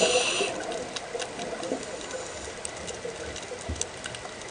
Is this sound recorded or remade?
recorded